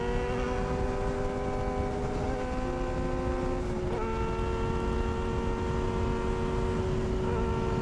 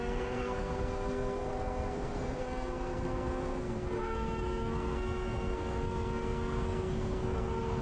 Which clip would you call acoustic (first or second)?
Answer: first